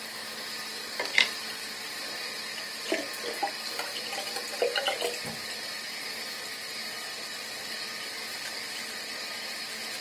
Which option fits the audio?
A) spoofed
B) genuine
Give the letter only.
B